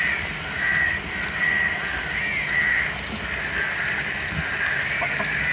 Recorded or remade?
recorded